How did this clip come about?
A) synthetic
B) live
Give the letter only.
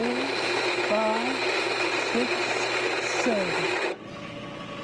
B